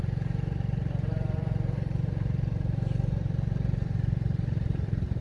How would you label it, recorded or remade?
remade